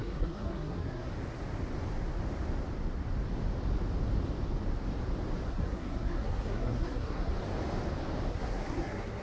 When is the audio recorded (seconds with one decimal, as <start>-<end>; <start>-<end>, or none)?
1.1-5.5; 7.3-8.3